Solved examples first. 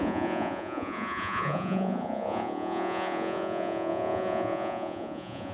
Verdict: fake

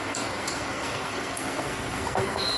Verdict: fake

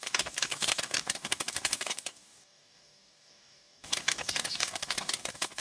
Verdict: fake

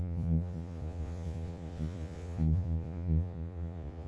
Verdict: fake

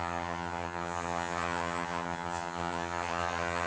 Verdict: fake